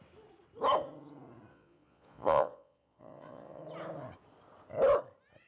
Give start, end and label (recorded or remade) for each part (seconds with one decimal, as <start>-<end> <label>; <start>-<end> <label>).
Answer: 0.0-1.5 recorded; 1.5-3.6 remade; 3.6-5.5 recorded

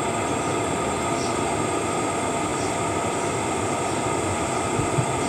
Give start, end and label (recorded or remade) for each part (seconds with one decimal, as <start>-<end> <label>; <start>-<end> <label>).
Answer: 0.0-5.3 recorded

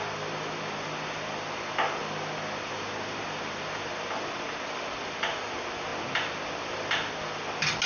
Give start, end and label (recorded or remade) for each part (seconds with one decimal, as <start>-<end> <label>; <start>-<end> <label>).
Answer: 0.0-7.9 recorded

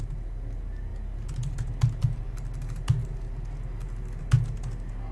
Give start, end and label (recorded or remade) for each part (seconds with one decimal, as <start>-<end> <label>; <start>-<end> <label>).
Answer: 0.0-5.1 recorded

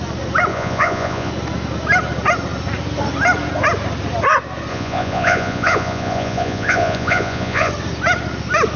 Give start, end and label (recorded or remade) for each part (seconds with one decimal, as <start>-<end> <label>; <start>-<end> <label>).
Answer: 0.0-0.5 recorded; 0.5-1.3 remade; 1.3-4.7 recorded; 4.7-7.7 remade; 7.7-8.8 recorded